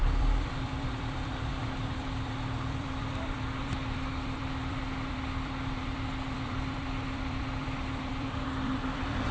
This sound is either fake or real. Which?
fake